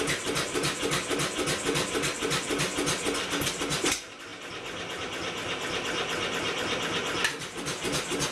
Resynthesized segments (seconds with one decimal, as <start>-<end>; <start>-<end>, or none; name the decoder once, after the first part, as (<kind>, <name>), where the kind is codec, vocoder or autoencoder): none